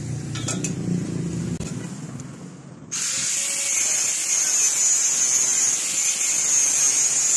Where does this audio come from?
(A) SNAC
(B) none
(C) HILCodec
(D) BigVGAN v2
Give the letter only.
B